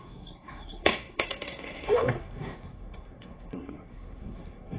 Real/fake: fake